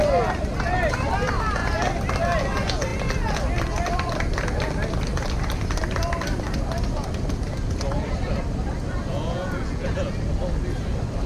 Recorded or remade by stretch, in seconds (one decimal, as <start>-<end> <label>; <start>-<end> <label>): 0.0-9.1 recorded; 9.1-10.1 remade; 10.1-11.3 recorded